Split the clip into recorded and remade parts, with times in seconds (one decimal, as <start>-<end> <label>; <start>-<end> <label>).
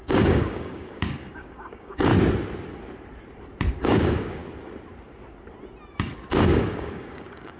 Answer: 0.0-2.1 remade; 2.1-3.7 recorded; 3.7-4.4 remade; 4.4-6.3 recorded; 6.3-7.6 remade